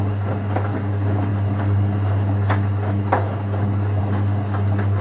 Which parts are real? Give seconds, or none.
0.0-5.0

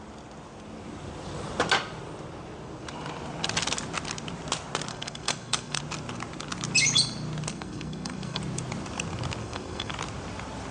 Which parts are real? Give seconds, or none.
0.0-4.9; 5.8-7.5; 8.4-9.4; 9.9-10.7

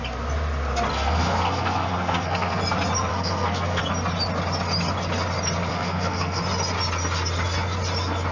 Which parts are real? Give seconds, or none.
0.0-0.9; 2.6-3.1; 3.8-5.7; 6.4-8.3

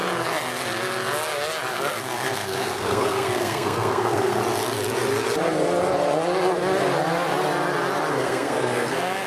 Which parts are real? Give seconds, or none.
0.0-1.7; 4.4-8.1

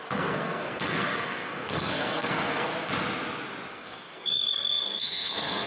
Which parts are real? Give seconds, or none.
2.7-3.7

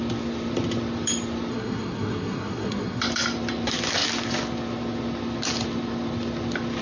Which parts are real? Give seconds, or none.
0.0-1.5; 3.0-6.8